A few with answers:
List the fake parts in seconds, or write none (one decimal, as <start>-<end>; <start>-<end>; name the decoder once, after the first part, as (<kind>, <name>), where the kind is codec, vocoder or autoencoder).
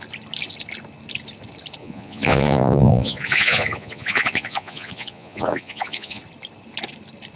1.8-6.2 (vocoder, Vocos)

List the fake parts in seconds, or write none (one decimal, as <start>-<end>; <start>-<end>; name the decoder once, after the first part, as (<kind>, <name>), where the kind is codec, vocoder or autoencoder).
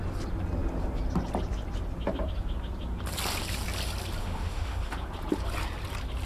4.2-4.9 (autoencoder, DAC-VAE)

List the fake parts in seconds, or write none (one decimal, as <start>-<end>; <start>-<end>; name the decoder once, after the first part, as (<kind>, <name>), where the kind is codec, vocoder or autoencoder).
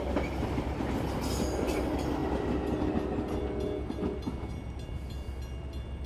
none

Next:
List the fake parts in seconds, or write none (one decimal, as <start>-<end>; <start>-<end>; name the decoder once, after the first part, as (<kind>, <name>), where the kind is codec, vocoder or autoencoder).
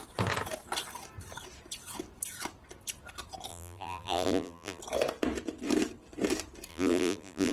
3.5-4.8 (vocoder, BigVGAN v2); 6.7-7.5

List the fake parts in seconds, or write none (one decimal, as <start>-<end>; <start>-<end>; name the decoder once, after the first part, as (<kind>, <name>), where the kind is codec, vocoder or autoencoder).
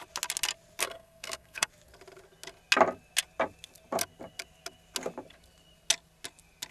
0.8-1.7 (codec, SNAC)